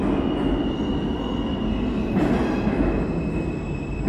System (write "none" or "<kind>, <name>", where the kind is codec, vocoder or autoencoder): none